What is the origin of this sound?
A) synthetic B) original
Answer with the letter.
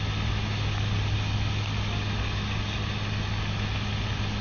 B